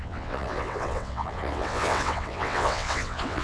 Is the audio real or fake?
fake